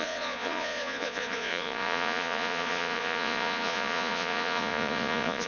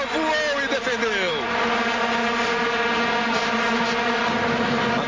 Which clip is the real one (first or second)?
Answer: second